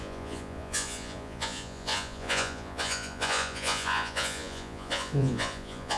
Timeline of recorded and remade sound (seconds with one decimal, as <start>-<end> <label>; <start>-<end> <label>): 0.0-6.0 remade